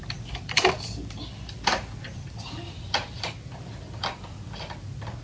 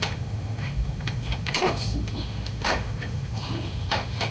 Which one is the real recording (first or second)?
first